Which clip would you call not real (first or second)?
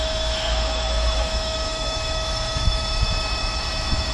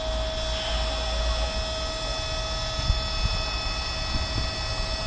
first